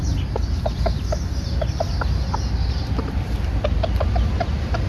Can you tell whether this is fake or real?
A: real